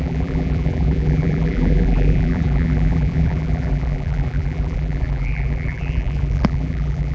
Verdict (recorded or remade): remade